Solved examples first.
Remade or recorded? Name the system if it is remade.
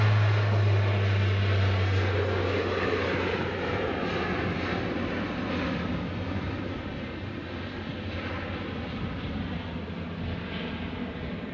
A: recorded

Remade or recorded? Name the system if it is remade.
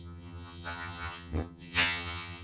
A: remade, vocoder, HiFi-GAN